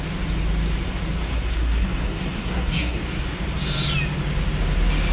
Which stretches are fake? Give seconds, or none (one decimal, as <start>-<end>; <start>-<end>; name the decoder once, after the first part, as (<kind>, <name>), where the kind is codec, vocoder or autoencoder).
1.3-3.0 (codec, SNAC)